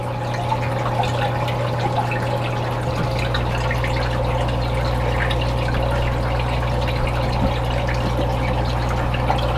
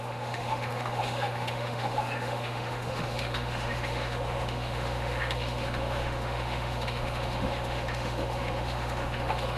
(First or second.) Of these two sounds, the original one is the first